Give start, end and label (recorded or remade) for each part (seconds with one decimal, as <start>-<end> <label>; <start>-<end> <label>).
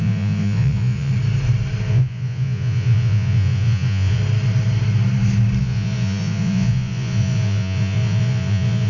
0.0-1.1 remade; 1.1-1.9 recorded; 1.9-4.2 remade; 4.2-5.6 recorded; 5.6-8.9 remade